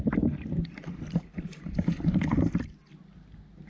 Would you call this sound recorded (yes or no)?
yes